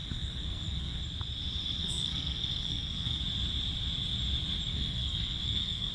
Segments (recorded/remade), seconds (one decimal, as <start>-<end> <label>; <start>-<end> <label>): 0.0-1.0 remade; 1.0-1.8 recorded; 1.8-3.2 remade; 3.2-4.7 recorded; 4.7-5.9 remade